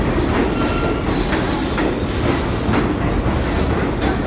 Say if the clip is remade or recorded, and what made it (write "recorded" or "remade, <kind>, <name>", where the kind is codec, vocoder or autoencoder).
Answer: recorded